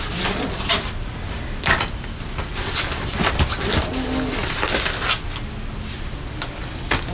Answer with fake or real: real